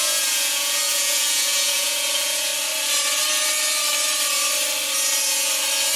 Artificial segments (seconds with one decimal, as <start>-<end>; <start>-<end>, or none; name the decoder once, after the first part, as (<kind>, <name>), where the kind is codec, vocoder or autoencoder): 0.0-2.5 (vocoder, Vocos)